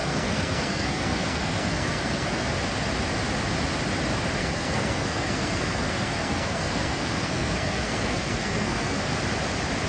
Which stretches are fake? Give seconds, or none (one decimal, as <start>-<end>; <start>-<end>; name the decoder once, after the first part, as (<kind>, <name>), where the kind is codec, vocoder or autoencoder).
0.0-2.5 (codec, SNAC); 4.4-9.2